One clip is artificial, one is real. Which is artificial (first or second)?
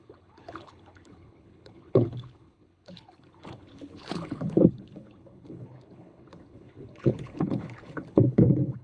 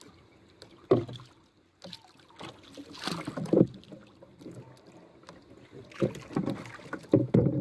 first